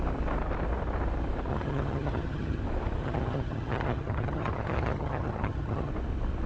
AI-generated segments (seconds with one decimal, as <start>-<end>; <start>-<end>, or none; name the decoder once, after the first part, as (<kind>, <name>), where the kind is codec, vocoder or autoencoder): 1.5-2.6 (vocoder, HiFi-GAN); 3.0-5.9